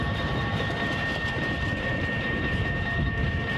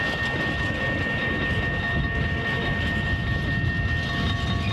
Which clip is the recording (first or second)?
second